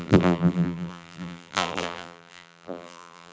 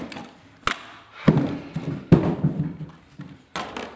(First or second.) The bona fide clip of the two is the second